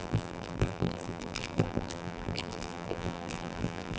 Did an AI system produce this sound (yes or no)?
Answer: yes